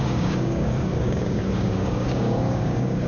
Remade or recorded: remade